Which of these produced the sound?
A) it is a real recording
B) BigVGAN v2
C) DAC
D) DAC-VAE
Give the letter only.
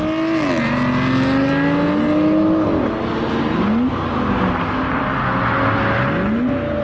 A